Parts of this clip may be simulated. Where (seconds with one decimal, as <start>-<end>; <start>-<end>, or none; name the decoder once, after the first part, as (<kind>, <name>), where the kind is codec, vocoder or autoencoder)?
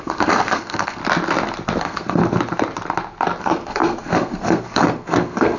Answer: 0.0-1.0 (codec, SNAC); 1.8-2.2; 3.4-5.6